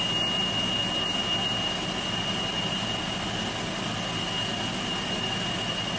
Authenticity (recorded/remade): recorded